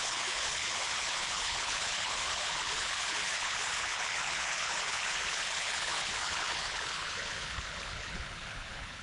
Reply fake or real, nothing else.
fake